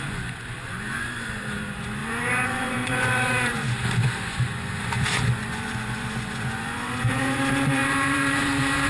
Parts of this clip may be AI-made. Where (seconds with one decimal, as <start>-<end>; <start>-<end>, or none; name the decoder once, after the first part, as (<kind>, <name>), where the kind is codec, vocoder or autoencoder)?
0.0-8.9 (vocoder, Vocos)

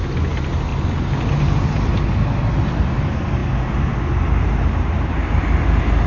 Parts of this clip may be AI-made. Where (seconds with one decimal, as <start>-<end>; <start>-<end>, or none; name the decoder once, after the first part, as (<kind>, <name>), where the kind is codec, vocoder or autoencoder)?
none

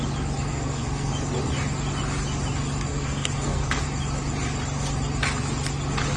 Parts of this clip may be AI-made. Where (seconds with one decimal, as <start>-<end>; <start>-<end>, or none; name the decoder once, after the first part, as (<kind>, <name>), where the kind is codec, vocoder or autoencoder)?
0.5-1.1 (codec, SNAC); 2.9-3.8

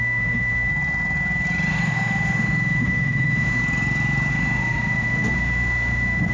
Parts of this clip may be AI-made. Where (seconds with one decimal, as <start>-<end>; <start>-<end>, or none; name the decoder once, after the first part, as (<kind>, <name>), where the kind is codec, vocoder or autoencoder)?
0.0-0.7 (autoencoder, DAC-VAE); 1.7-3.6; 4.3-6.3

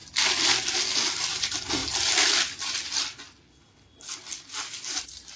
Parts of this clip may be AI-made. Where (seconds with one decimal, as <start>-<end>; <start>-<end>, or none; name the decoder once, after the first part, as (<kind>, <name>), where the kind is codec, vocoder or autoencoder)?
none

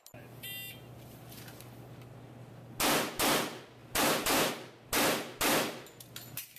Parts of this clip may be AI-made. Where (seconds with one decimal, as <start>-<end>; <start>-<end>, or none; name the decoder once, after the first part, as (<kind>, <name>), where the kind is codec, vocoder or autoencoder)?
3.8-4.5 (vocoder, BigVGAN v2)